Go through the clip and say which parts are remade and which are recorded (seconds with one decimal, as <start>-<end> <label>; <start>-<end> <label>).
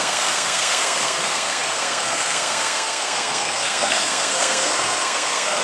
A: 0.0-5.6 remade